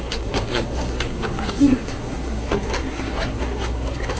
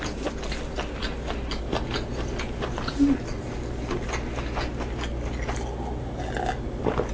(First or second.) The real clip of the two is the second